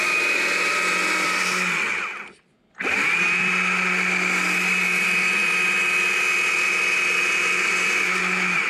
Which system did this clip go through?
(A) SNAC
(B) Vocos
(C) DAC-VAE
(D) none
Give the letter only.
D